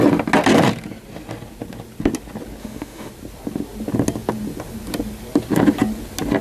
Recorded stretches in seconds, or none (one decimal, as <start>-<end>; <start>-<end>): 0.0-2.6; 3.1-6.4